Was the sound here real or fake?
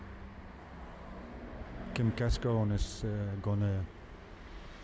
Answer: real